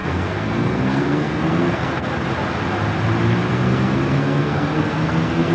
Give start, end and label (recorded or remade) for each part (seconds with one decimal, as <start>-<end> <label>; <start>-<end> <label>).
0.0-2.1 remade; 2.1-3.5 recorded; 3.5-5.5 remade